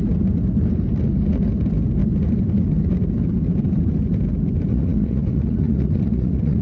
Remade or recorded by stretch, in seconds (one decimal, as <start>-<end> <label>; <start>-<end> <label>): 0.0-4.7 recorded; 4.7-6.6 remade